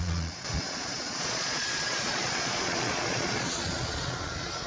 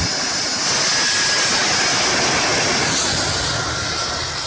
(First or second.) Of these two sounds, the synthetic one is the first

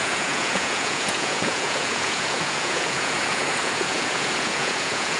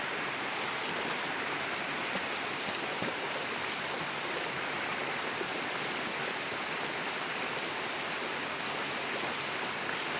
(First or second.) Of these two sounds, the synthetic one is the first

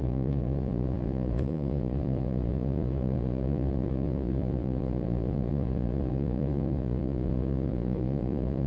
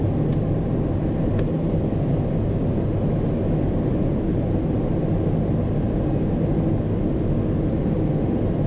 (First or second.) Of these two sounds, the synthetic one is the first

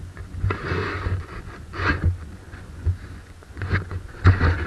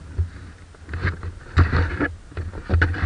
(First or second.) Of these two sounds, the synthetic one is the first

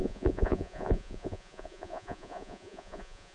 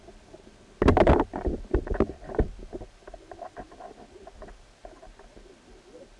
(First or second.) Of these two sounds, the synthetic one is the first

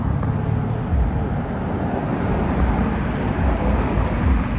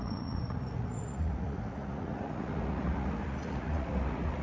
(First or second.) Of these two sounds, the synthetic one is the second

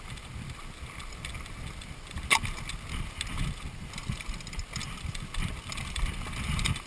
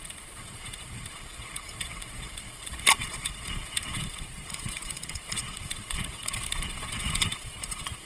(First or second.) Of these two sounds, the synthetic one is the second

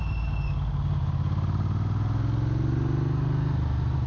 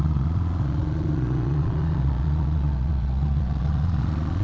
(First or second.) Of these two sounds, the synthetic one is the second